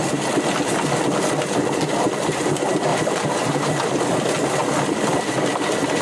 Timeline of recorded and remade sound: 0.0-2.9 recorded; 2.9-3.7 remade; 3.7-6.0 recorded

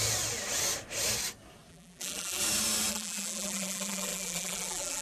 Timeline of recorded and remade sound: 0.0-1.7 recorded; 1.7-2.4 remade; 2.4-2.9 recorded; 2.9-5.0 remade